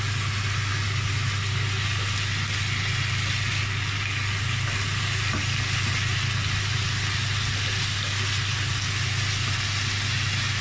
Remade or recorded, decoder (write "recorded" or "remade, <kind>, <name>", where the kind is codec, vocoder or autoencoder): recorded